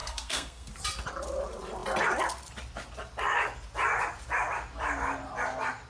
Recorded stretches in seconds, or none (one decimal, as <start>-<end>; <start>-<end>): 0.7-5.9